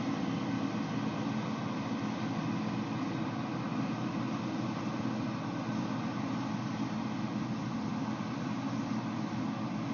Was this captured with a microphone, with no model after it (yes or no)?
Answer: yes